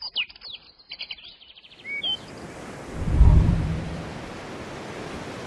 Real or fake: real